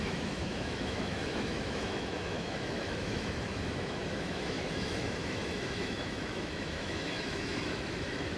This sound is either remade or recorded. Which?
remade